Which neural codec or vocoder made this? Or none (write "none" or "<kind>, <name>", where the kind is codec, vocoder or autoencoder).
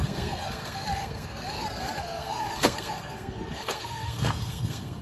codec, SNAC